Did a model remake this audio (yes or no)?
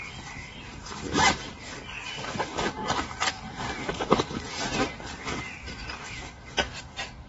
no